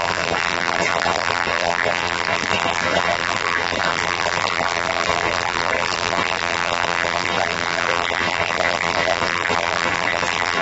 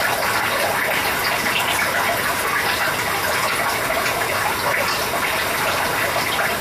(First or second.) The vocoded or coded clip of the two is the first